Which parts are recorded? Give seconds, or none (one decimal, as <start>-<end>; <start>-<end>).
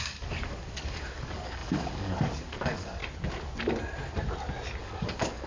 3.0-4.8